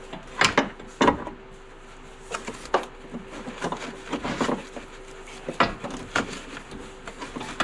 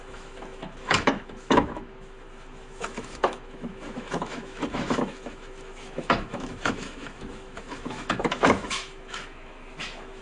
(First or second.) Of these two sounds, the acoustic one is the first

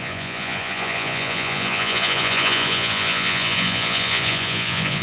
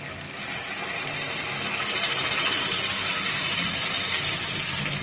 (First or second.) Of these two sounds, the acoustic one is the second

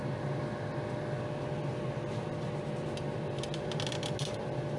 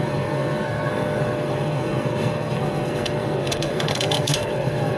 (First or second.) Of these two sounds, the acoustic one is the first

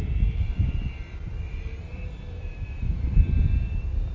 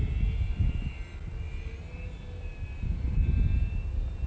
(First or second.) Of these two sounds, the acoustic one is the second